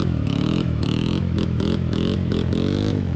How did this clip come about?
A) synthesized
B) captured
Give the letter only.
A